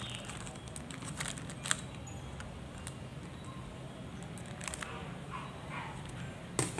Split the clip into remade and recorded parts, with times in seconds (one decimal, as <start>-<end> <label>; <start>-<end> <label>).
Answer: 0.0-6.8 recorded